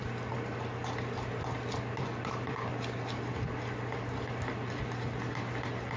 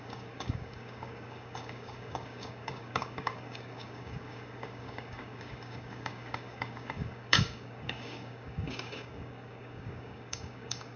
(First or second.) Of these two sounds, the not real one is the second